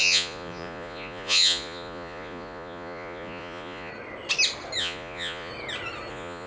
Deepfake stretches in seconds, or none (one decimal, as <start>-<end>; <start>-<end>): 0.0-3.9; 4.8-5.5; 6.1-6.5